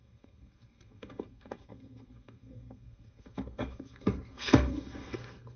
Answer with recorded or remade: remade